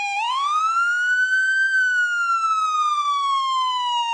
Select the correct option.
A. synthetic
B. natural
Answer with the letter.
A